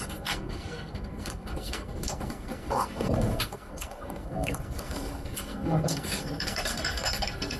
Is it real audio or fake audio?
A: fake